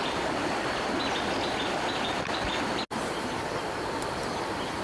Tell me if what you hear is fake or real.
real